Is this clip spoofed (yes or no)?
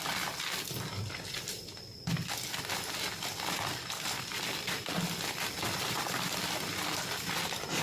no